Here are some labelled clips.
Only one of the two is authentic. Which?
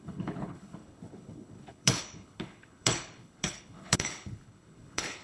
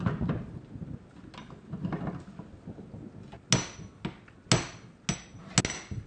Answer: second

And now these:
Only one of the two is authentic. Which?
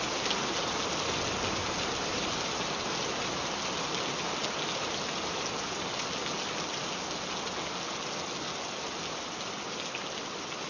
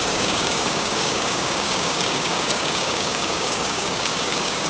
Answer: first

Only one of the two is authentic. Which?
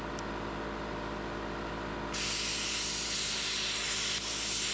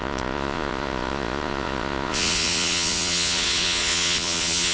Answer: first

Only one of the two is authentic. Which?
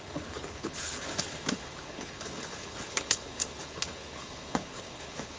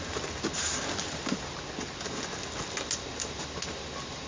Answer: second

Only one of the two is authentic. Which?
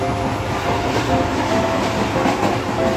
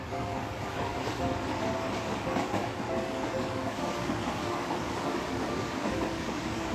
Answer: first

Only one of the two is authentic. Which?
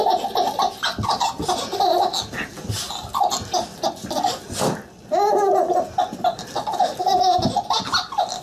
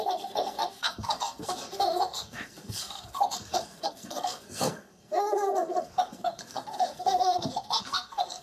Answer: first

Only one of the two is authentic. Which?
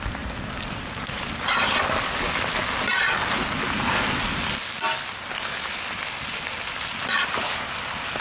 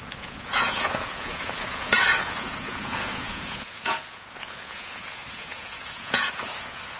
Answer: first